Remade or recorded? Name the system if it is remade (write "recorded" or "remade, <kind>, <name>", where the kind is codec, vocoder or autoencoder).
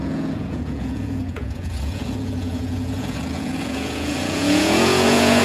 remade, vocoder, Vocos